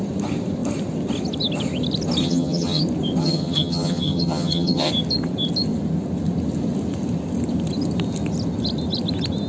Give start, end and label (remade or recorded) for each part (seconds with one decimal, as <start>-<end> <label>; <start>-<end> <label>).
0.0-2.2 recorded; 2.2-2.8 remade; 2.8-3.2 recorded; 3.2-4.9 remade; 4.9-9.5 recorded